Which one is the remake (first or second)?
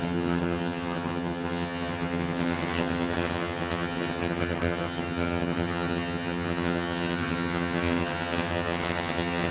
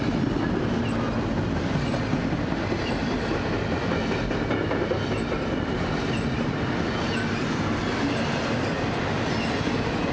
first